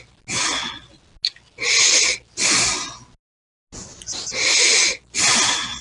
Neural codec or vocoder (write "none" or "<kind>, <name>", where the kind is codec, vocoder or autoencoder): none